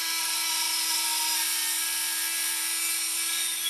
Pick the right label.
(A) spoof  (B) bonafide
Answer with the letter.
B